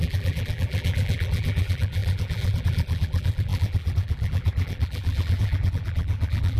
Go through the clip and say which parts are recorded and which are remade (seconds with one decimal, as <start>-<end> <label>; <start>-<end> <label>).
0.0-6.6 remade